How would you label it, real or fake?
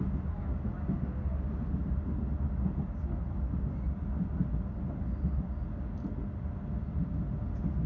real